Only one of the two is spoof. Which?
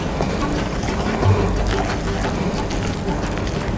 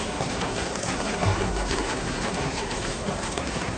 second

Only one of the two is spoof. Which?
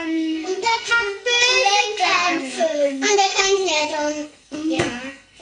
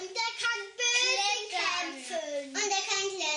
first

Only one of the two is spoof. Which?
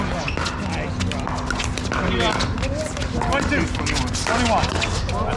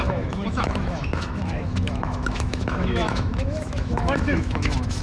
second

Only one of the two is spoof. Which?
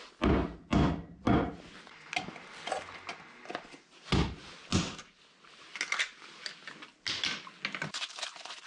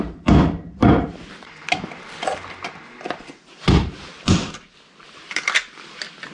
second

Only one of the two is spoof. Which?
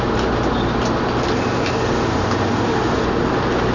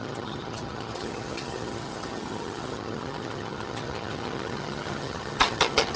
second